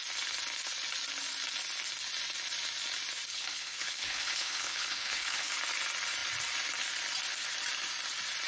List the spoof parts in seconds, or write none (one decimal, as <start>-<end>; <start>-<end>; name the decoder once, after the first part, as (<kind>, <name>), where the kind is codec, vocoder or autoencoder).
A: 3.3-5.5 (codec, HILCodec)